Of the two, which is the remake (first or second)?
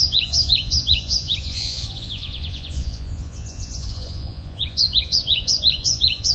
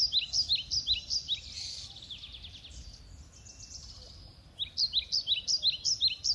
first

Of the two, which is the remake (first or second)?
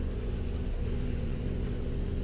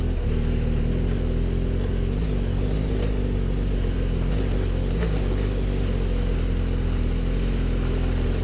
first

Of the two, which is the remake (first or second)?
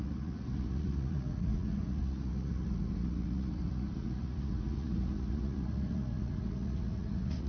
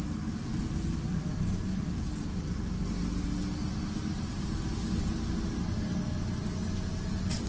first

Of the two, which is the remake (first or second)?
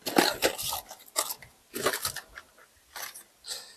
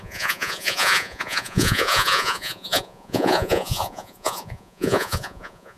second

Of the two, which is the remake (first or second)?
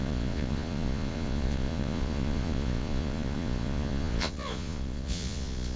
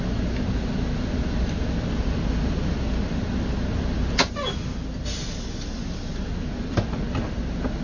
first